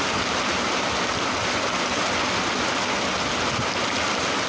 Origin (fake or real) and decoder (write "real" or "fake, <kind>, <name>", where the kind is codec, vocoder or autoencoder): real